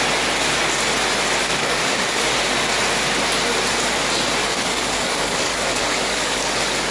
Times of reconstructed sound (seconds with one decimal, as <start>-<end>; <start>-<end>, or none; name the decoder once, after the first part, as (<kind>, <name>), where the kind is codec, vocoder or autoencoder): 1.4-2.2 (codec, DAC); 4.4-6.5